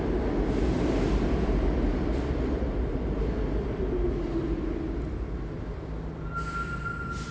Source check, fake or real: real